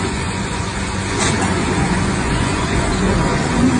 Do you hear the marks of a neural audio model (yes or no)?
yes